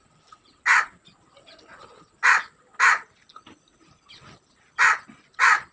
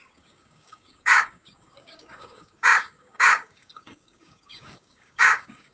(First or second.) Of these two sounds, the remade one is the second